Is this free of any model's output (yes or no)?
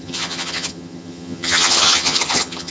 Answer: no